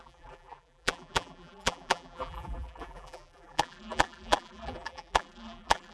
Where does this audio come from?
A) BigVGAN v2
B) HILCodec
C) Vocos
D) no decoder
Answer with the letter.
A